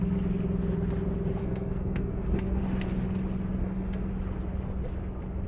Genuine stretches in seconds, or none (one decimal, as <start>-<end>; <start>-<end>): 0.0-1.4; 2.6-3.6; 4.1-5.5